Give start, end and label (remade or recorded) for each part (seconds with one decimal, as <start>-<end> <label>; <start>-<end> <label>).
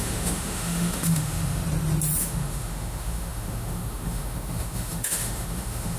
0.0-1.6 remade; 1.6-2.2 recorded; 2.2-6.0 remade